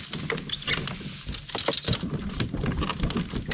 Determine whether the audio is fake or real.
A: real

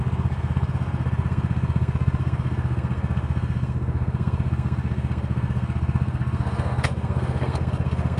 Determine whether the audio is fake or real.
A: fake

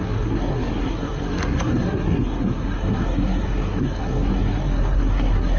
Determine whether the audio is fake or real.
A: fake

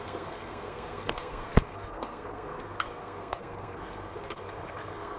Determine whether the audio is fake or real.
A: fake